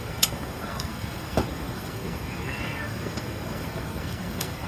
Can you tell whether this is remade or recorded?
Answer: remade